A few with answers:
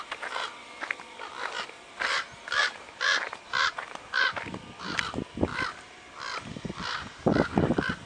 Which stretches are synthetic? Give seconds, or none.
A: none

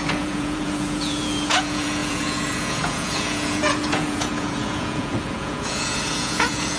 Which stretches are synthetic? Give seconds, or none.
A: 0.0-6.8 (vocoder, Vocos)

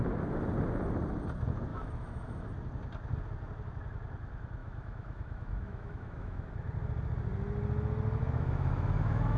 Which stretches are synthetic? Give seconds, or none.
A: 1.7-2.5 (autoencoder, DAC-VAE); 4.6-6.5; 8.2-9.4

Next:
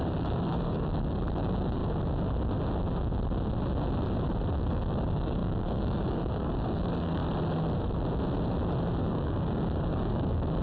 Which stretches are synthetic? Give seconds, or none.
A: 0.0-1.8 (codec, DAC); 4.7-7.2; 9.0-10.6

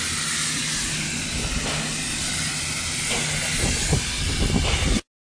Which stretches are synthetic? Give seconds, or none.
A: none

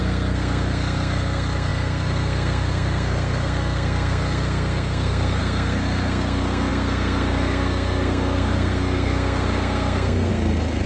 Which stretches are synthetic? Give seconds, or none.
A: 0.0-10.9 (codec, SNAC)

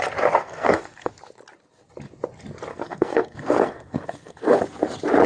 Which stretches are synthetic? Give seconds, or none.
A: 0.4-1.1 (codec, SNAC); 2.7-4.6

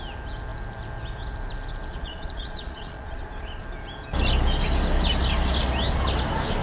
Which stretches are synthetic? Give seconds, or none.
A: 1.9-3.6 (vocoder, Vocos)